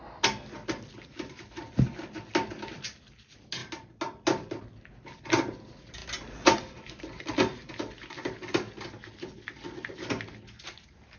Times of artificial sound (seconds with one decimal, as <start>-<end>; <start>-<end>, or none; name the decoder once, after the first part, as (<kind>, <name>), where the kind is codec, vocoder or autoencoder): none